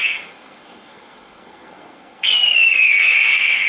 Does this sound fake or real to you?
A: fake